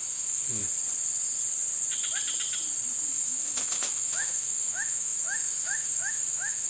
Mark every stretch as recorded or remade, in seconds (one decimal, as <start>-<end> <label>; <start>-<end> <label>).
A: 0.0-0.6 remade; 0.6-3.1 recorded; 3.1-6.7 remade